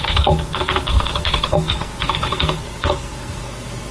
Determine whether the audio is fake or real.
fake